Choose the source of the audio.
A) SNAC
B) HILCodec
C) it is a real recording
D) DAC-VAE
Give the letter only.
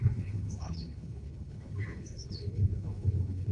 B